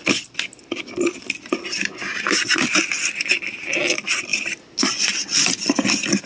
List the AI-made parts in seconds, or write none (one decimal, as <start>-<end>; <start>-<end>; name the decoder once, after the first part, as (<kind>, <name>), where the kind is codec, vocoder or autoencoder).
none